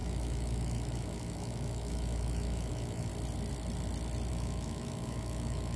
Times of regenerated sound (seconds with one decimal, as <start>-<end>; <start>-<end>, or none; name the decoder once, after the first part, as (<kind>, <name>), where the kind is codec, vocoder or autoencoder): 0.0-3.1 (autoencoder, DAC-VAE); 4.3-5.8